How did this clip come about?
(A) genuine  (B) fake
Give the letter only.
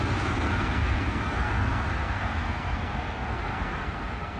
B